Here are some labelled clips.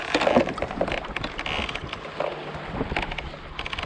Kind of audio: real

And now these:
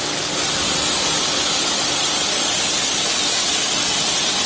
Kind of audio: fake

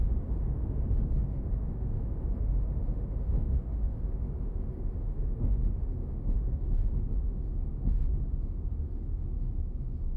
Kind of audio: fake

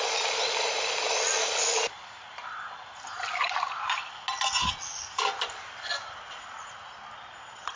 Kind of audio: real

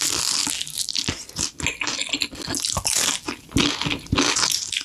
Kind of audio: real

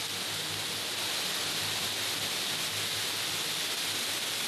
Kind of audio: real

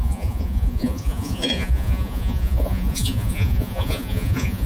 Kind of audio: fake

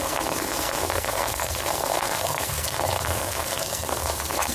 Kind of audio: fake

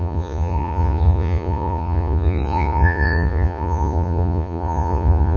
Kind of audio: fake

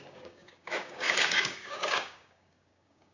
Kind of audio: fake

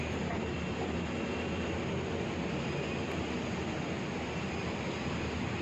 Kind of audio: real